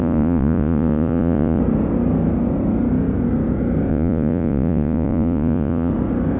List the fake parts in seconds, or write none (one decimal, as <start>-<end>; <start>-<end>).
0.0-1.6; 3.9-5.9